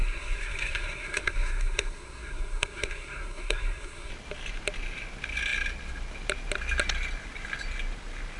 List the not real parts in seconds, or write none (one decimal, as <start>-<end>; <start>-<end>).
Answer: 0.0-4.1